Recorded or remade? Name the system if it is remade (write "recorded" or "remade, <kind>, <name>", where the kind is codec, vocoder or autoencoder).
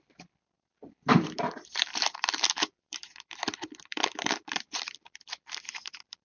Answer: remade, vocoder, BigVGAN v2